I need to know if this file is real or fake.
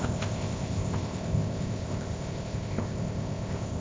fake